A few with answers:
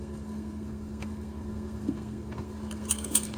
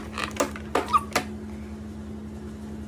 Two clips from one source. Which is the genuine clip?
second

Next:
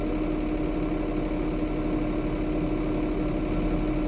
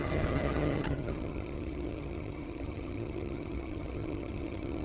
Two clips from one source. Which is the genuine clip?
first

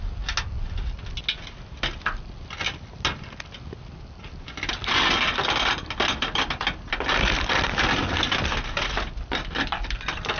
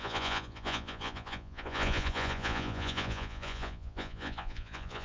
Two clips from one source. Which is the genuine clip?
first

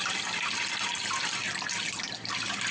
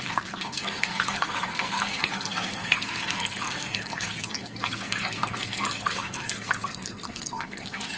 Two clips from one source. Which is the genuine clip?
first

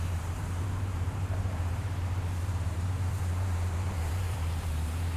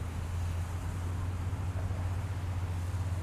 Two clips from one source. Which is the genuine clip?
second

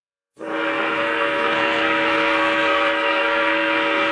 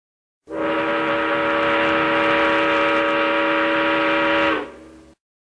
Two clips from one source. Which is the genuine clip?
second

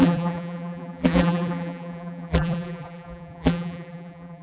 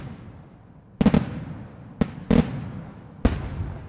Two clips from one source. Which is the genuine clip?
second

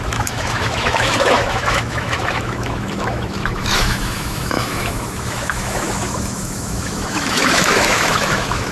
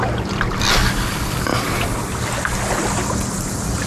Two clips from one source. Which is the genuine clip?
second